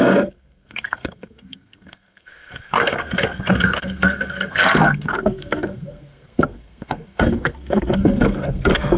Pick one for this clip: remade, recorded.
remade